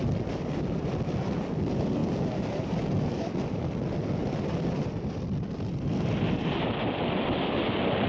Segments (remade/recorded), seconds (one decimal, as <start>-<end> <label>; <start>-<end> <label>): 0.0-8.1 recorded